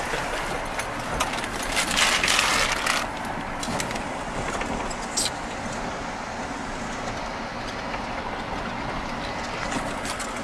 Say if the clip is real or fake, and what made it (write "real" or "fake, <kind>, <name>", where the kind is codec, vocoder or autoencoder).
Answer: real